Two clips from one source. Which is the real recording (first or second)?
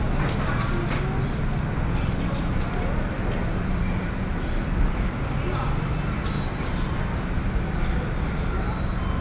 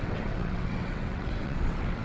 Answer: first